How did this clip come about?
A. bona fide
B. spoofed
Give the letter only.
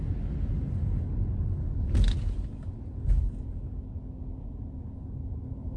A